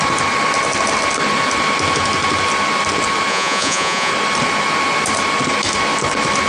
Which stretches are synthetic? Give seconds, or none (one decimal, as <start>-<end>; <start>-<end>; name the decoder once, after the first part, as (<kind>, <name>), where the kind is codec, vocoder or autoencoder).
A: 3.3-4.1 (vocoder, Vocos)